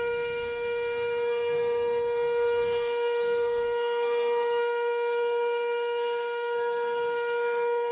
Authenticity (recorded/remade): remade